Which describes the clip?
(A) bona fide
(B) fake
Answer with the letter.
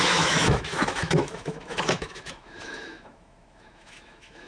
B